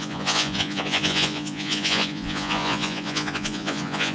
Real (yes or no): no